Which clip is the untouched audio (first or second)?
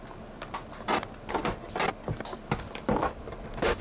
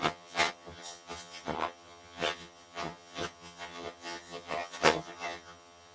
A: first